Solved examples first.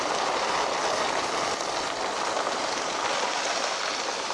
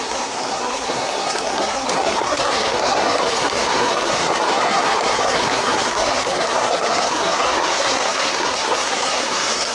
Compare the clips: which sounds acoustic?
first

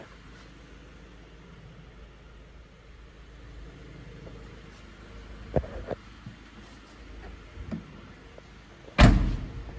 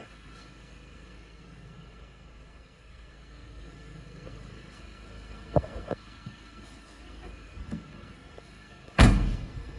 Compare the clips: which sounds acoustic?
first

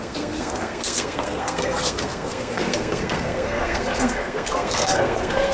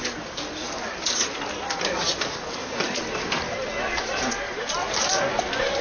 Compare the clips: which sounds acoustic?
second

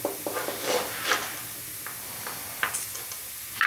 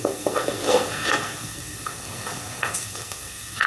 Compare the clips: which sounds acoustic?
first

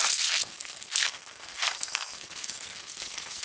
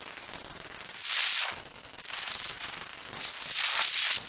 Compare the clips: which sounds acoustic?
second